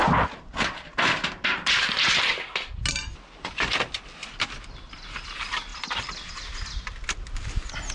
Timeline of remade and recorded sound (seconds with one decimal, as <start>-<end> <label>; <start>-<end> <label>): 0.0-7.9 recorded